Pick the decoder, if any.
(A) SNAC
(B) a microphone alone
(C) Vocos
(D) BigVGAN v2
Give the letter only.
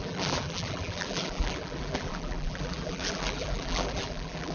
D